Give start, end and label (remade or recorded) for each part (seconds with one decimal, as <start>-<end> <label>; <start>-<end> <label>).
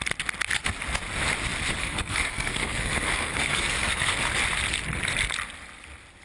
0.0-1.8 recorded; 1.8-4.1 remade; 4.1-6.2 recorded